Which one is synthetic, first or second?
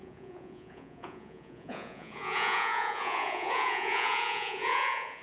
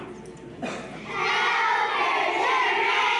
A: first